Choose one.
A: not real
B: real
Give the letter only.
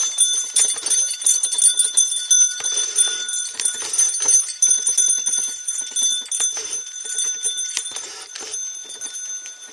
B